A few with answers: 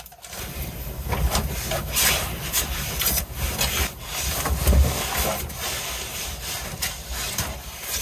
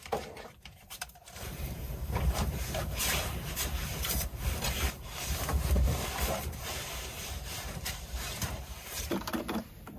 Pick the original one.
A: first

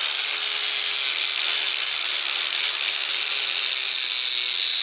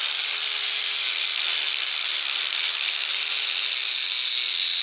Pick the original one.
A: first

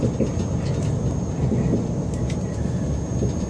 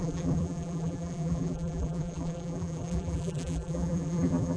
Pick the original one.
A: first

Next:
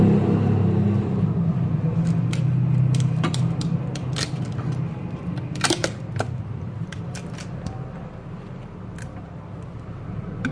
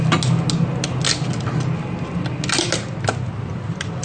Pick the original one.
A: second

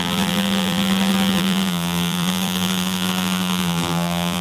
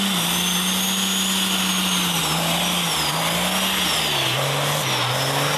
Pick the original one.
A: second